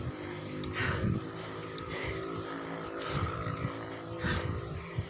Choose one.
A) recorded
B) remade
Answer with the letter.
A